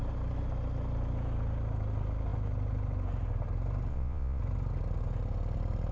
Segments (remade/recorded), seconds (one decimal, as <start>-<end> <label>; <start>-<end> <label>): 0.0-3.9 recorded; 3.9-4.4 remade; 4.4-5.9 recorded